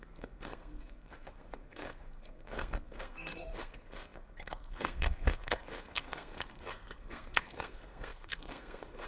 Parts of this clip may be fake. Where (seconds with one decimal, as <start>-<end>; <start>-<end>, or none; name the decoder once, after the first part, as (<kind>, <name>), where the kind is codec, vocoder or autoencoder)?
0.0-9.1 (codec, SNAC)